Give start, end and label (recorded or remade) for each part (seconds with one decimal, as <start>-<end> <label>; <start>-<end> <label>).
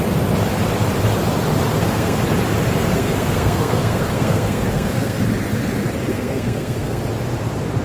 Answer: 0.0-1.7 recorded; 1.7-2.2 remade; 2.2-2.9 recorded; 2.9-5.2 remade; 5.2-6.1 recorded; 6.1-7.0 remade; 7.0-7.8 recorded